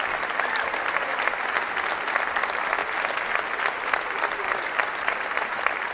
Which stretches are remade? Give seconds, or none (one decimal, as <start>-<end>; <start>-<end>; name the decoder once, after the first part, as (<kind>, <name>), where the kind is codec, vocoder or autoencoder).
0.0-1.1 (vocoder, BigVGAN v2); 2.2-2.8; 3.7-5.9